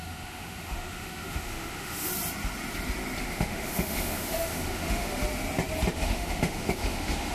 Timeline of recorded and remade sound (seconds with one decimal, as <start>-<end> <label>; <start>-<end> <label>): 0.0-2.1 remade; 2.1-3.2 recorded; 3.2-5.2 remade; 5.2-5.9 recorded; 5.9-7.3 remade